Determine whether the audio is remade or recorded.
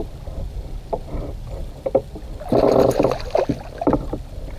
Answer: recorded